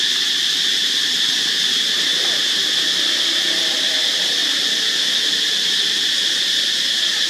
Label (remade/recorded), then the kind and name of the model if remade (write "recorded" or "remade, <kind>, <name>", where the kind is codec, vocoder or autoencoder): recorded